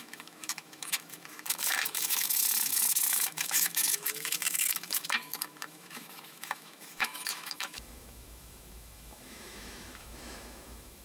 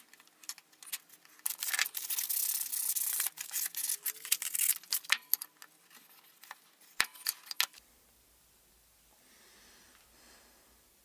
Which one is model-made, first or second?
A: first